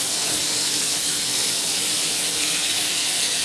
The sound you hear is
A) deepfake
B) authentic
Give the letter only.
A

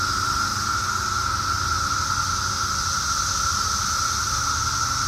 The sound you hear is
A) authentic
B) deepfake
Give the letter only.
A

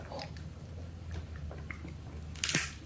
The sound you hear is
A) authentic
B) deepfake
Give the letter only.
A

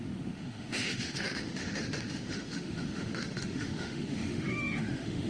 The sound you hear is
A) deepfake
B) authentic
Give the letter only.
A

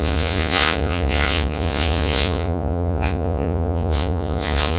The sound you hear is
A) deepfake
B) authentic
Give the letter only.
A